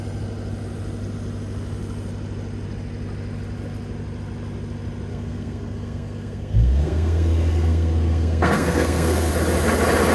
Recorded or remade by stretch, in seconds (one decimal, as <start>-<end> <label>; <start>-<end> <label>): 0.0-5.1 recorded; 5.1-9.3 remade; 9.3-10.1 recorded